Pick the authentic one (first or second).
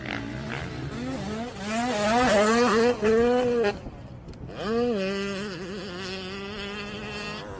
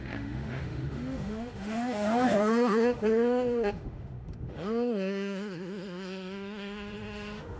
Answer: first